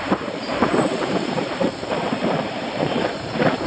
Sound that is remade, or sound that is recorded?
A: remade